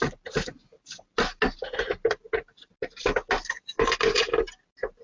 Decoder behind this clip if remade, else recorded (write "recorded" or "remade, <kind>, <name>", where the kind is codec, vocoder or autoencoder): recorded